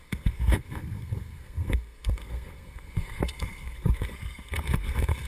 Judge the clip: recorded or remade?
remade